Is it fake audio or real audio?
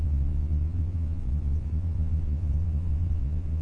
fake